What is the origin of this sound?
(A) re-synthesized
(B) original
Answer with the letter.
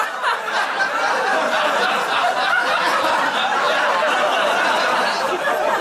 B